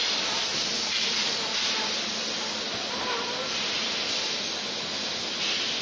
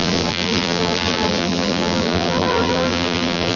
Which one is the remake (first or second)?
second